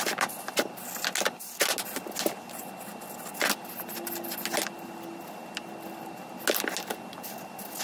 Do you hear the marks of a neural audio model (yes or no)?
no